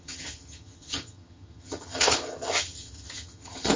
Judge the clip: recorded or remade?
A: remade